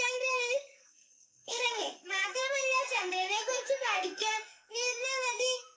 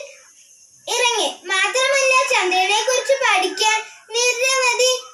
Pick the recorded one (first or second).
second